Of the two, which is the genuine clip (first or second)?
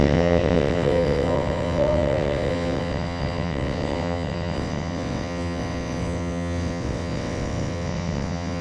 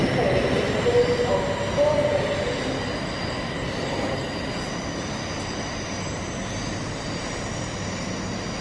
second